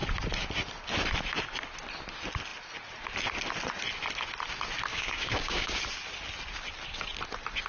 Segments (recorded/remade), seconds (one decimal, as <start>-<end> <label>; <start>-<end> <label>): 0.0-4.9 recorded; 4.9-5.8 remade; 5.8-7.7 recorded

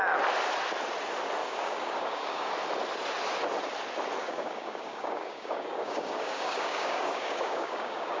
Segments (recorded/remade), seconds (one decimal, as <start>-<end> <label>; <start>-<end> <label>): 0.0-1.4 recorded; 1.4-2.5 remade; 2.5-4.2 recorded; 4.2-8.2 remade

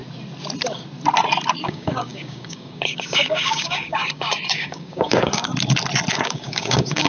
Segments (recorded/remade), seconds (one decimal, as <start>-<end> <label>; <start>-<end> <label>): 0.0-1.6 recorded; 1.6-5.5 remade; 5.5-6.1 recorded; 6.1-7.1 remade

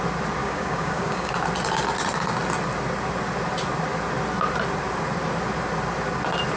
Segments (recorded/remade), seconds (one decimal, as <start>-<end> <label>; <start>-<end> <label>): 0.0-0.4 recorded; 0.4-1.3 remade; 1.3-6.6 recorded

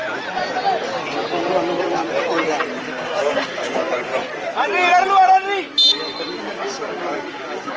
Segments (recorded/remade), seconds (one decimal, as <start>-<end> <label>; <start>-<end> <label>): 0.0-2.8 recorded; 2.8-4.1 remade; 4.1-6.4 recorded; 6.4-7.8 remade

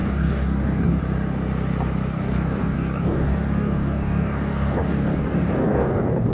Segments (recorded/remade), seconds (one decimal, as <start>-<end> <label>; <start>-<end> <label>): 0.0-1.0 remade; 1.0-2.1 recorded; 2.1-6.3 remade

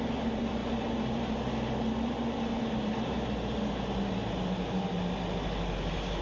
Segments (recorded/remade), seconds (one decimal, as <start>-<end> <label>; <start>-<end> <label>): 0.0-6.2 recorded

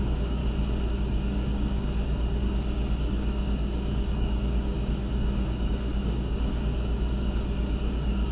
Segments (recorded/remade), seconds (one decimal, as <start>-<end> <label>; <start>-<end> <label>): 0.0-0.4 remade; 0.4-0.9 recorded; 0.9-8.3 remade